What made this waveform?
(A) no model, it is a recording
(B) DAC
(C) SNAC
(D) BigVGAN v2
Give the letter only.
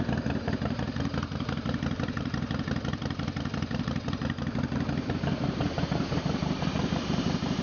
D